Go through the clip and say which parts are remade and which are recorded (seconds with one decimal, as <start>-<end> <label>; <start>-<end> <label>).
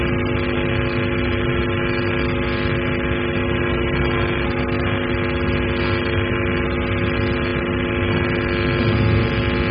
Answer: 0.0-9.7 recorded